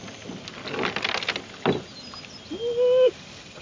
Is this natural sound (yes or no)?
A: yes